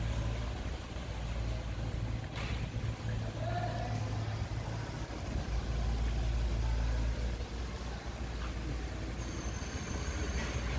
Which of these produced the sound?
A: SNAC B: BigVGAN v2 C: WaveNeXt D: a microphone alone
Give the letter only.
D